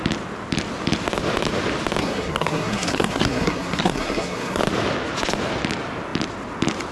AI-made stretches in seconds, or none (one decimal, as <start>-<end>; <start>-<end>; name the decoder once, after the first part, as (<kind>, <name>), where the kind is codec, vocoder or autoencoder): 2.0-4.6 (codec, SNAC)